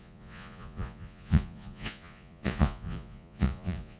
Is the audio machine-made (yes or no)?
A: yes